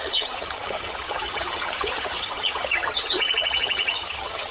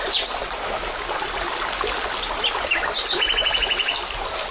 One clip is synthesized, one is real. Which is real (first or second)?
second